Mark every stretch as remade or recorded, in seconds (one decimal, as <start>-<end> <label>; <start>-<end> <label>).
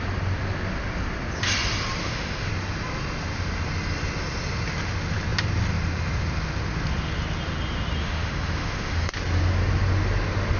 0.0-2.0 recorded; 2.0-2.5 remade; 2.5-8.0 recorded; 8.0-9.1 remade; 9.1-10.6 recorded